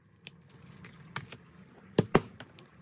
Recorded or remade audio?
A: recorded